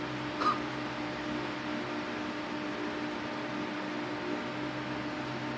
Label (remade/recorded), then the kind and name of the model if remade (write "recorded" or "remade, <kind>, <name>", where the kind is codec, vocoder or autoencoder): recorded